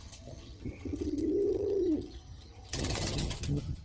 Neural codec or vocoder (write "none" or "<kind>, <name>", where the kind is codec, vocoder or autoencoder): vocoder, HiFi-GAN